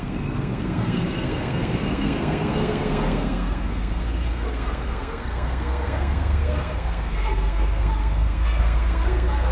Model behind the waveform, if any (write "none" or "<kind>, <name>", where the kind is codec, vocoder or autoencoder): codec, SNAC